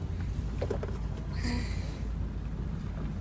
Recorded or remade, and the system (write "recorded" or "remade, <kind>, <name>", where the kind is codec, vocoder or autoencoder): recorded